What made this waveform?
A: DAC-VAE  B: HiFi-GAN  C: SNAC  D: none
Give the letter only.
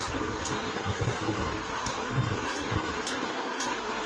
C